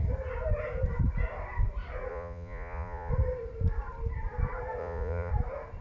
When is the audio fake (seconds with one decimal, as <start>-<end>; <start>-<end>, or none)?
2.1-3.1; 4.8-5.3